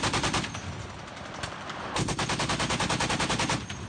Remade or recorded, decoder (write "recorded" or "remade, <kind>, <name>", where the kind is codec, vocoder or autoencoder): recorded